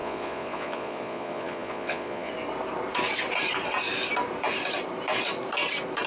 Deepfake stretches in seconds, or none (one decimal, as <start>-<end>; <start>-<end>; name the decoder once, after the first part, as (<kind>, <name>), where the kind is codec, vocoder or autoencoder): 0.0-2.3 (vocoder, Vocos)